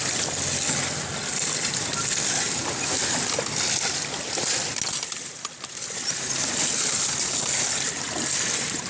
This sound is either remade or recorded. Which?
recorded